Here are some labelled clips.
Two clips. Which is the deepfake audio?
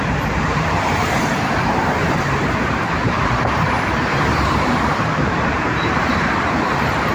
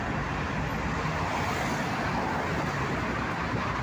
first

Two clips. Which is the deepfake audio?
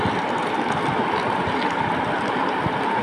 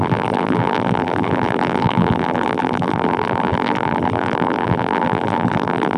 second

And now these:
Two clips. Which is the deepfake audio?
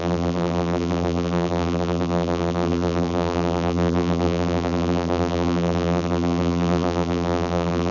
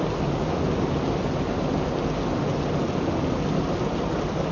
first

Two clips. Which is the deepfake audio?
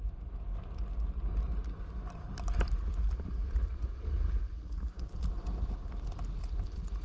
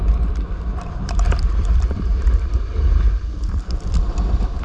second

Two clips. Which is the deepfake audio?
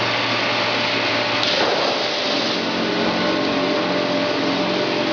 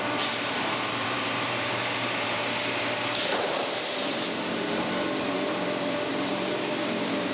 second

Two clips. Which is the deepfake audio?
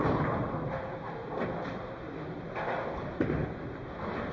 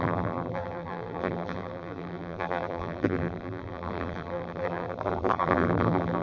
second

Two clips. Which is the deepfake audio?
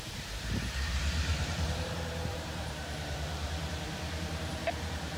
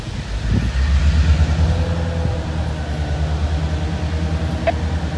first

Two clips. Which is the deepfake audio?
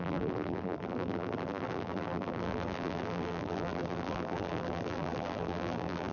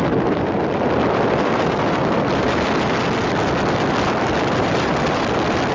first